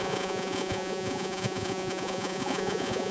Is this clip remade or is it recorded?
remade